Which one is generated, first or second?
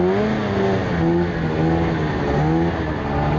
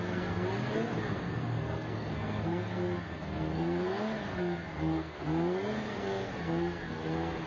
second